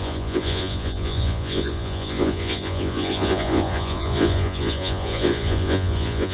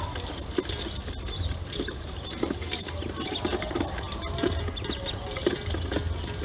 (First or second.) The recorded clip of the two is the second